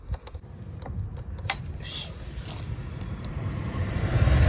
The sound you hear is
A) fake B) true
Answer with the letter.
A